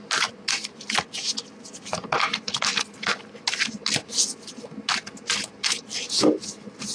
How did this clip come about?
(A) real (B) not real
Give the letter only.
A